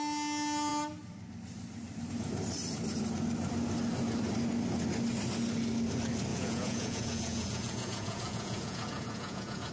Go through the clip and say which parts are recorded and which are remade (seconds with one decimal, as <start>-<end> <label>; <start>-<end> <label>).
0.0-6.3 recorded; 6.3-9.7 remade